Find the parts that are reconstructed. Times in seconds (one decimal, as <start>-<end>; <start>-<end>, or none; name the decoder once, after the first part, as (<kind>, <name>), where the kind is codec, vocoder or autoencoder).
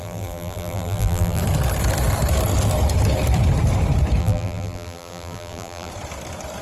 0.0-1.4 (vocoder, BigVGAN v2); 4.2-5.9